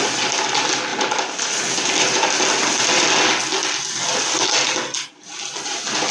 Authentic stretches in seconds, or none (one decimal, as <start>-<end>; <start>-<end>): 0.0-0.9; 2.4-6.1